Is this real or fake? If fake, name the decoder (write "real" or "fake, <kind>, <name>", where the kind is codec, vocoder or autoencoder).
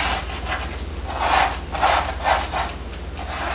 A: real